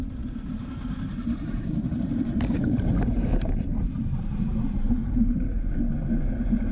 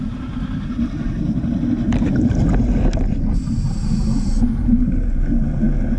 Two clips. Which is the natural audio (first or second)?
second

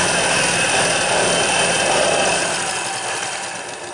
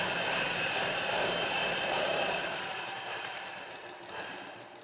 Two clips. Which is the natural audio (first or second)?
first